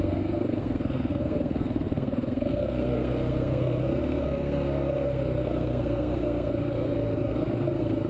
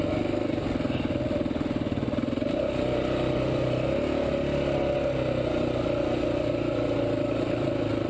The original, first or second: second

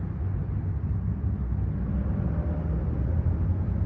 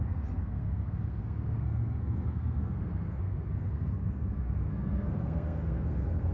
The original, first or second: first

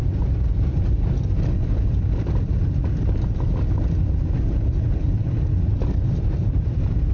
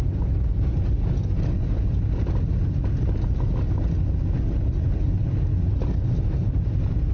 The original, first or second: second